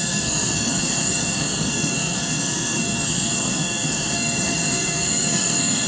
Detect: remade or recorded remade